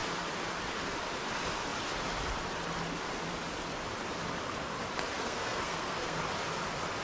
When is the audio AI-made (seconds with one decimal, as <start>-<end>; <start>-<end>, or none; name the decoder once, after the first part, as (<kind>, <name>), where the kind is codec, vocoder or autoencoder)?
5.1-6.2 (codec, SNAC)